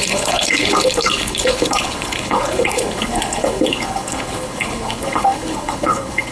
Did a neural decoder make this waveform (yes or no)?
yes